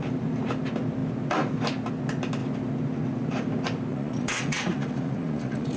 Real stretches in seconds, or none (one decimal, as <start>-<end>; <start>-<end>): 0.0-3.9